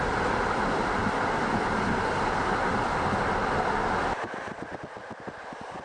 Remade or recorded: recorded